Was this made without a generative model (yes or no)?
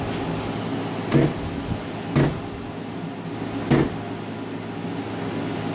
yes